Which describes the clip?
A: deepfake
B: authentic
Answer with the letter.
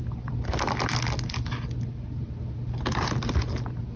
B